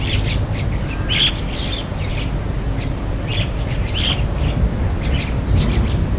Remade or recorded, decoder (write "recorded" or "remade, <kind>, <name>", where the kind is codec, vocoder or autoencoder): recorded